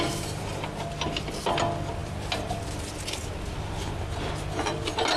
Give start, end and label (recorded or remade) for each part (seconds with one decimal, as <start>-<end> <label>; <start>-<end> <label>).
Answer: 0.0-5.2 recorded